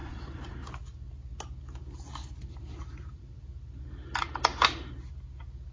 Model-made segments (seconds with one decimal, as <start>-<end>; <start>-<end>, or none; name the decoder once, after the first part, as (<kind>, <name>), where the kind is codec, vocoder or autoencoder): 0.0-0.5 (vocoder, BigVGAN v2)